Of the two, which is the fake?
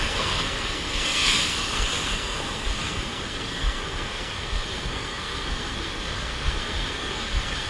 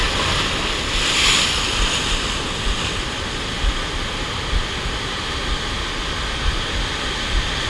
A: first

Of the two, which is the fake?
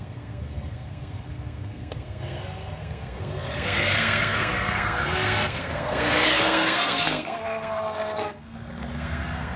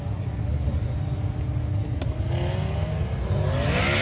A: first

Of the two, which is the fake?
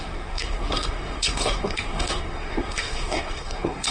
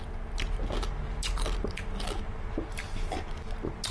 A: first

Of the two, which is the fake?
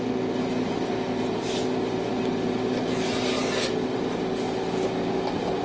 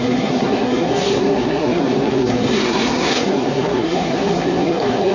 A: second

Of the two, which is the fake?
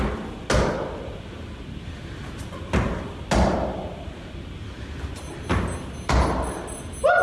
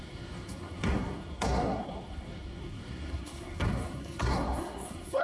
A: second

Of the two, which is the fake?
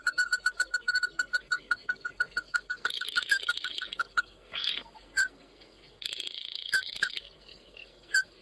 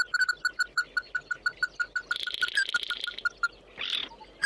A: first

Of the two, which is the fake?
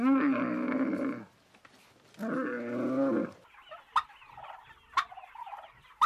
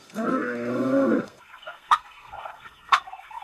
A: second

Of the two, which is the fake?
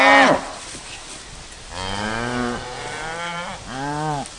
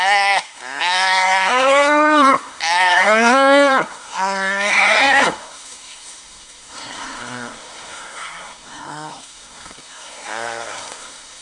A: second